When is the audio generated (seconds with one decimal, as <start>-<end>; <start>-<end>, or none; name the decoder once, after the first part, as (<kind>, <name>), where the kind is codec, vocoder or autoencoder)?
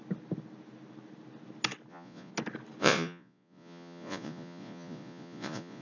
1.9-2.3 (vocoder, Vocos); 2.8-5.8